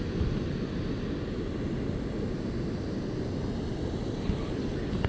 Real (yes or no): yes